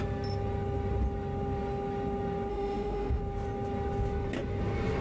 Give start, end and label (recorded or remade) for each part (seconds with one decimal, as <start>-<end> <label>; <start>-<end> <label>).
0.0-2.5 recorded; 2.5-3.2 remade; 3.2-5.0 recorded